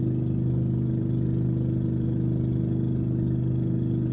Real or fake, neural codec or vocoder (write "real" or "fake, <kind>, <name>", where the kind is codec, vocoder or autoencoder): real